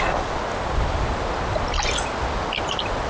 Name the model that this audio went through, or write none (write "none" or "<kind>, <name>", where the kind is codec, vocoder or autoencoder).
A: none